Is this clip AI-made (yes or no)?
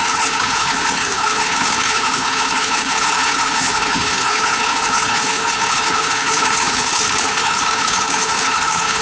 yes